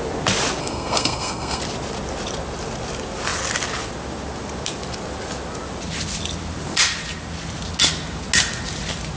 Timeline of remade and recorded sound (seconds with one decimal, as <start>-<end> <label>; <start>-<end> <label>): 0.0-0.6 recorded; 0.6-1.6 remade; 1.6-9.2 recorded